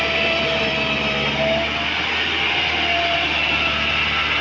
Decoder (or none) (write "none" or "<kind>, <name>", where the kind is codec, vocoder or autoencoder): vocoder, BigVGAN v2